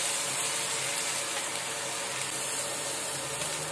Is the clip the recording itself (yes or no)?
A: yes